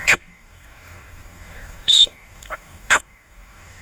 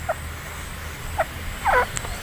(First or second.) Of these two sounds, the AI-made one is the first